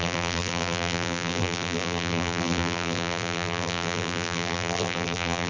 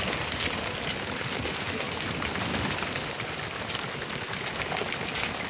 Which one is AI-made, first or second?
first